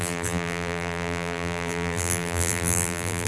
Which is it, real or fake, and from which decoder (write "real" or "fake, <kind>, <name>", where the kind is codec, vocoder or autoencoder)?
fake, vocoder, BigVGAN v2